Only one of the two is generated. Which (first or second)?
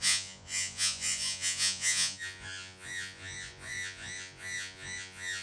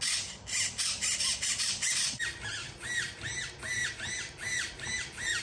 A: first